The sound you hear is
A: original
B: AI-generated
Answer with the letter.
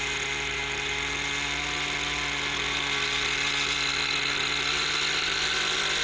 A